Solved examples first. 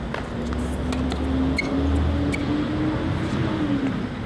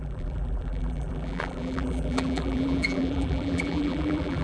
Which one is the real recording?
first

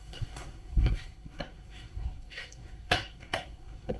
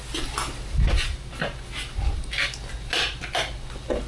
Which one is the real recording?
second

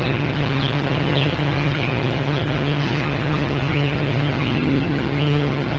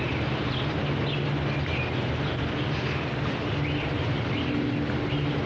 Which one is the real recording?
second